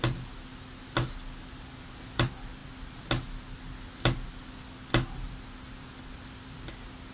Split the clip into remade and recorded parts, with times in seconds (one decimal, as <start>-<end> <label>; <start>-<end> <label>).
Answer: 0.0-7.1 recorded